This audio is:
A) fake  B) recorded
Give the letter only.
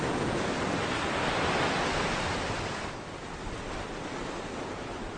B